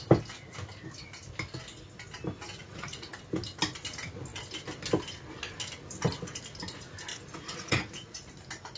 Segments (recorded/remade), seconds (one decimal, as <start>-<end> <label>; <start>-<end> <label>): 0.0-2.6 recorded; 2.6-3.1 remade; 3.1-7.1 recorded; 7.1-8.3 remade; 8.3-8.8 recorded